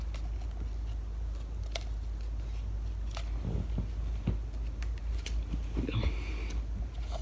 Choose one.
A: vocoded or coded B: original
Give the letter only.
B